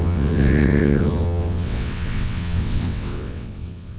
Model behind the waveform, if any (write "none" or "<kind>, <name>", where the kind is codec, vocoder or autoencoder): vocoder, WaveNeXt